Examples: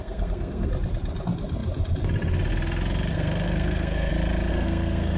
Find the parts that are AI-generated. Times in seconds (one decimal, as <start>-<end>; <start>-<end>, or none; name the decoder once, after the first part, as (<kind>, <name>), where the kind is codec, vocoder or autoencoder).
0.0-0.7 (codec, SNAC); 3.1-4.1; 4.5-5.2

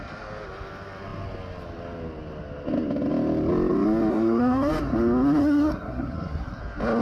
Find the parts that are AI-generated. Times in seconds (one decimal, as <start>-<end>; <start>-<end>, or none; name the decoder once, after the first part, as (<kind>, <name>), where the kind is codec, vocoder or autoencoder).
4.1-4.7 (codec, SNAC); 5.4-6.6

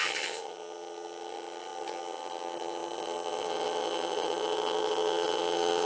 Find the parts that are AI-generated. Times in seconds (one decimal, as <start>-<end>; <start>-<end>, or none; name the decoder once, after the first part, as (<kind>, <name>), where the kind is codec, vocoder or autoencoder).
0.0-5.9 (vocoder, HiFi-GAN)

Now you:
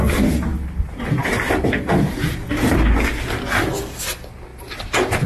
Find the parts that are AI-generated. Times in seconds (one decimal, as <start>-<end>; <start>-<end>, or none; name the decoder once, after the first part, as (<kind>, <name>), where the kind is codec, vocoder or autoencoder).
none

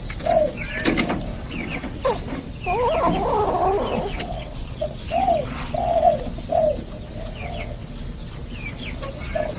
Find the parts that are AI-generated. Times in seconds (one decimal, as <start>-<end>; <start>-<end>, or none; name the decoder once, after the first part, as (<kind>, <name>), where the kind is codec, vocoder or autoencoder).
1.3-2.0 (vocoder, WaveNeXt); 4.1-6.3